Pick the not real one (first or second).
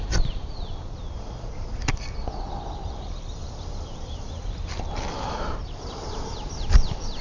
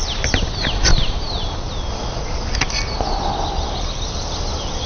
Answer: first